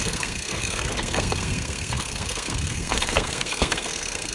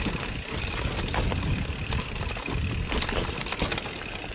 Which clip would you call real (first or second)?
second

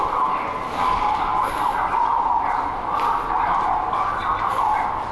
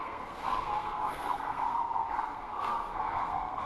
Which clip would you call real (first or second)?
first